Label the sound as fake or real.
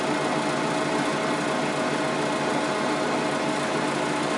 real